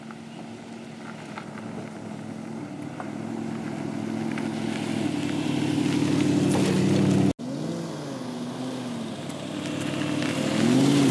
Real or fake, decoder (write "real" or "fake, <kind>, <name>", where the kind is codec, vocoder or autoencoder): real